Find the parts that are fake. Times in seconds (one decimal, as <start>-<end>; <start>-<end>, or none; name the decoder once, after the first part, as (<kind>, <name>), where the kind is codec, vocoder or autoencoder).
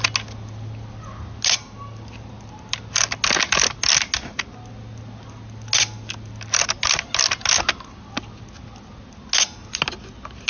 none